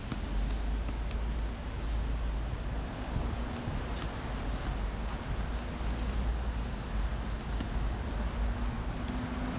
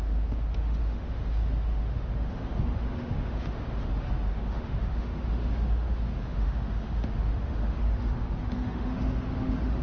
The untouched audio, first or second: first